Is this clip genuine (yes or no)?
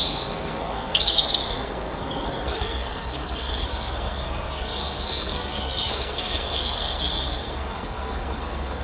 no